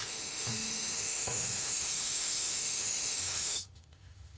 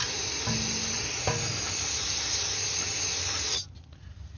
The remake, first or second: first